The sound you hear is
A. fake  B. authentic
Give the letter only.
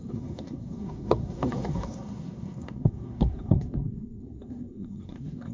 A